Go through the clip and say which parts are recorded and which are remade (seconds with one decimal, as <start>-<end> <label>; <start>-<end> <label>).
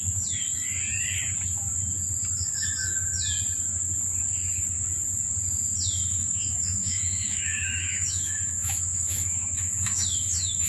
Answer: 0.0-6.0 recorded; 6.0-10.7 remade